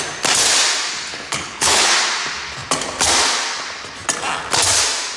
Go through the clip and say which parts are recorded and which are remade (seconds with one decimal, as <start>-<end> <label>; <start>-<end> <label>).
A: 0.0-1.1 recorded; 1.1-1.9 remade; 1.9-5.2 recorded